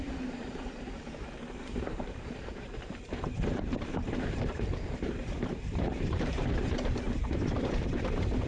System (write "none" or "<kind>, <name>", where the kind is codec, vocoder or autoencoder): vocoder, BigVGAN v2